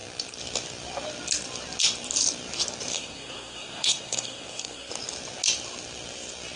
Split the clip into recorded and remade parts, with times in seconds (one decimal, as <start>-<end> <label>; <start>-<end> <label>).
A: 0.0-2.9 recorded; 2.9-4.9 remade; 4.9-6.6 recorded